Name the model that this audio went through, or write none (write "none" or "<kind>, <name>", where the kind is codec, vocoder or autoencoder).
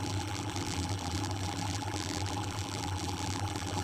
vocoder, BigVGAN v2